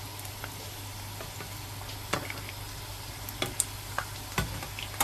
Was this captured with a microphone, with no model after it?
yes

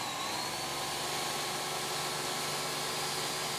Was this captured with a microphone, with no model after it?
yes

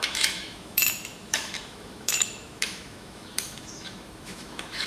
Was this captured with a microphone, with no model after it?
no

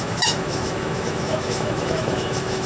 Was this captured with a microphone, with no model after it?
no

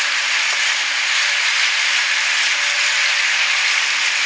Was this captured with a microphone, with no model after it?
yes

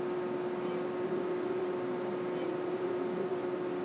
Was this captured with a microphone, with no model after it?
yes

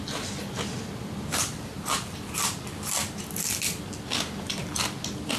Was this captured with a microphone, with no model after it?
yes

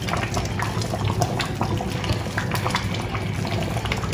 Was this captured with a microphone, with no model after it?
yes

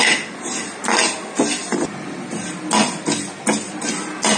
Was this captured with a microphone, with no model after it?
yes